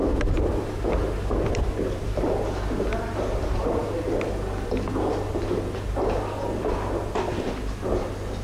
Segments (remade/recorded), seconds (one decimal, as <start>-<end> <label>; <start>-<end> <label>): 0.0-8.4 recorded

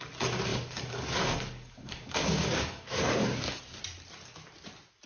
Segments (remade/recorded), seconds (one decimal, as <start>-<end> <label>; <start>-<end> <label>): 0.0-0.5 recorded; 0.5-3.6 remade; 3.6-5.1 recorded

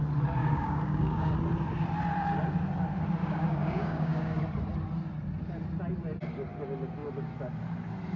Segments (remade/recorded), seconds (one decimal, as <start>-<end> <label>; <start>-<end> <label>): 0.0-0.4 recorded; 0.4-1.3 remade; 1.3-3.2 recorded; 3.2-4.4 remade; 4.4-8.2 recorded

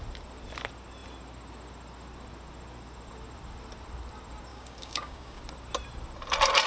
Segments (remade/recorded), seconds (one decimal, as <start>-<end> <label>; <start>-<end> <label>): 0.0-4.5 recorded; 4.5-5.4 remade; 5.4-6.7 recorded

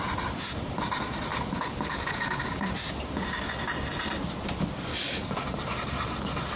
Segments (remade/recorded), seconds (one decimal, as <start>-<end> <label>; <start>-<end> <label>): 0.0-1.3 recorded; 1.3-2.7 remade; 2.7-4.9 recorded; 4.9-5.4 remade; 5.4-6.6 recorded